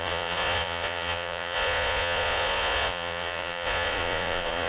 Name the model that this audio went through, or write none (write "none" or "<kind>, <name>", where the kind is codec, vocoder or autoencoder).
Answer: vocoder, Vocos